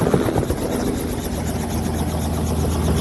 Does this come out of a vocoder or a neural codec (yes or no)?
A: no